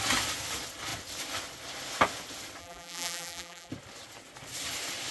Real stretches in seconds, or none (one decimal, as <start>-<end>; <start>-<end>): 0.0-2.6; 3.7-5.1